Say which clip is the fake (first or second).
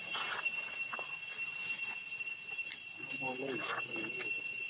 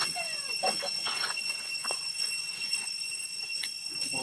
second